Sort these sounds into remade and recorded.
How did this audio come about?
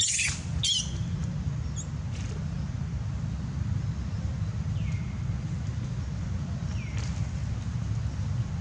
recorded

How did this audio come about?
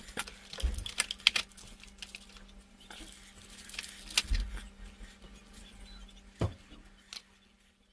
recorded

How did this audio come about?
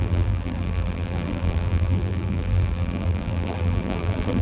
remade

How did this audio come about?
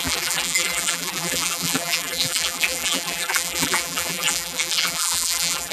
remade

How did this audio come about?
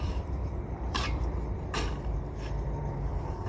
remade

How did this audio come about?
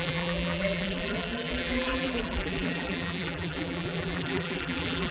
remade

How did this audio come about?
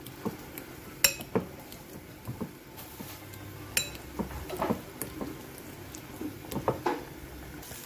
recorded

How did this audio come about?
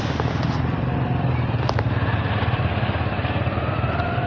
recorded